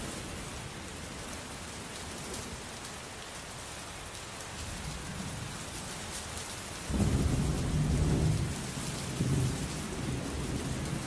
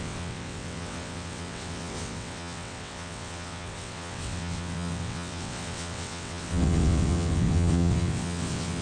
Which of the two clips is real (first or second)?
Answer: first